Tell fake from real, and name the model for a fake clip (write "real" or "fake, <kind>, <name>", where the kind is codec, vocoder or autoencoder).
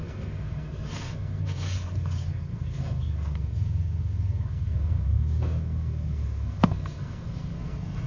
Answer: fake, codec, SNAC